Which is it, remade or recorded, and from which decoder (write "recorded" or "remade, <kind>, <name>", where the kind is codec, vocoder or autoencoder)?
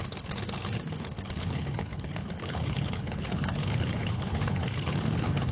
remade, codec, HILCodec